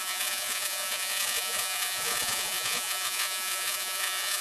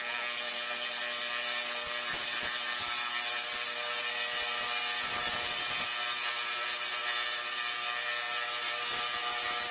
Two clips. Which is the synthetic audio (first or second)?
first